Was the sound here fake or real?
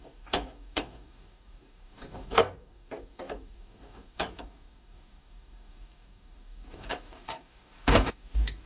fake